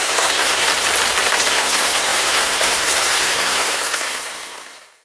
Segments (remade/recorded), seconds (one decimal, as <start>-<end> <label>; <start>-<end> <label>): 0.0-0.7 remade; 0.7-1.5 recorded; 1.5-5.0 remade